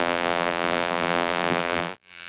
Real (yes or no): no